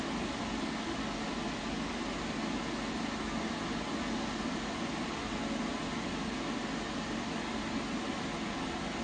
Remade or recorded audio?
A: recorded